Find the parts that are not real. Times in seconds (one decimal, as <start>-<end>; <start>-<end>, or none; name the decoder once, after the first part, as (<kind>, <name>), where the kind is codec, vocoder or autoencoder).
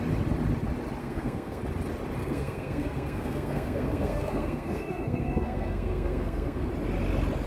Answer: 1.0-1.6 (codec, SNAC); 2.2-6.7